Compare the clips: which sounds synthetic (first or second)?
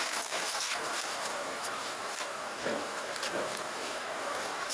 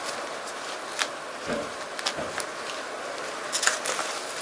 first